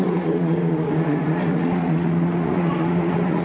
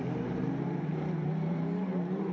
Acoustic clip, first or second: second